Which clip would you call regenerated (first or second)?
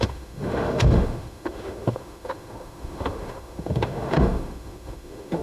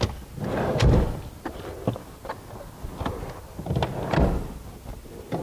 first